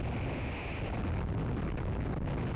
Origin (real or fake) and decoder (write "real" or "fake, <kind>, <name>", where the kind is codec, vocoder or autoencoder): real